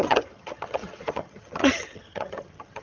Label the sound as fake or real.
fake